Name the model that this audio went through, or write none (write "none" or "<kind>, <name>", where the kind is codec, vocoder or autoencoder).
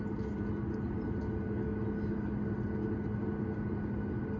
none